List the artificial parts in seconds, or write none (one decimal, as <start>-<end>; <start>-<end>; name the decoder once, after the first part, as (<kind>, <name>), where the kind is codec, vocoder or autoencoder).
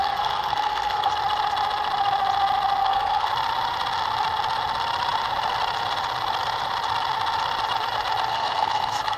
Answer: 0.0-1.1 (codec, SNAC); 2.8-3.3; 8.3-9.2